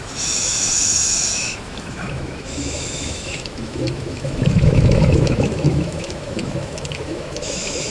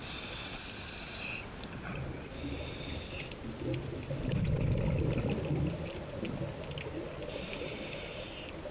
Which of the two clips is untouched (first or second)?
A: second